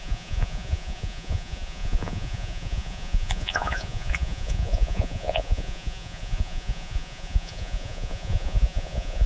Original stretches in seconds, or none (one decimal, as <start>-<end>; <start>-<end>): none